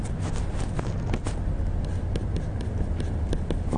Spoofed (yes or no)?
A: no